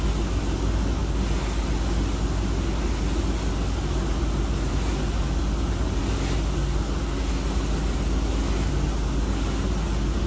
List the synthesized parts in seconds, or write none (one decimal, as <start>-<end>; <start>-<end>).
none